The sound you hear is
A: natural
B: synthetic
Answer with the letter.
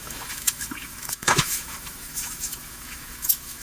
B